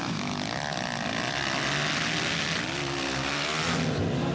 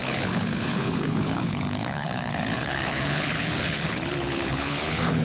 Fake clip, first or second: second